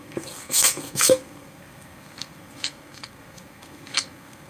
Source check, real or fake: fake